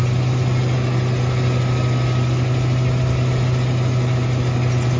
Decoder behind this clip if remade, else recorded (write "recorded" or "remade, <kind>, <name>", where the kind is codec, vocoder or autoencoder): recorded